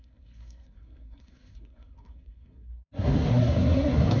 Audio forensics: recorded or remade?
remade